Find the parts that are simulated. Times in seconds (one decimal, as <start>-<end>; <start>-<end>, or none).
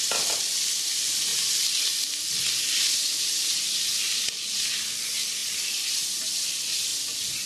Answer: 0.0-1.3; 2.7-6.9